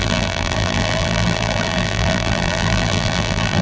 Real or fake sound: fake